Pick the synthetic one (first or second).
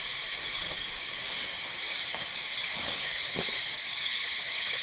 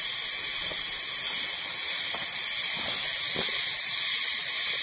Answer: first